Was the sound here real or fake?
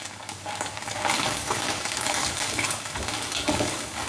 fake